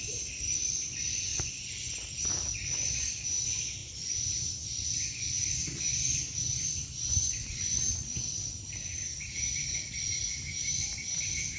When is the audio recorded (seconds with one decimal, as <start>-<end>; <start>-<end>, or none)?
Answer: 0.0-1.3; 1.9-3.8; 7.8-11.6